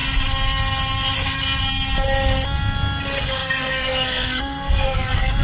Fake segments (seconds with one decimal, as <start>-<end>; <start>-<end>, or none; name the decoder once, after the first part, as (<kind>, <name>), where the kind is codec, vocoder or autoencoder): 3.2-5.4 (codec, SNAC)